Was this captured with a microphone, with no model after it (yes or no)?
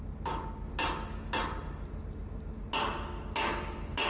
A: yes